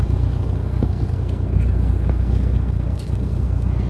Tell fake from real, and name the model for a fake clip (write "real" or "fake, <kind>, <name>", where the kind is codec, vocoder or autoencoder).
fake, codec, SNAC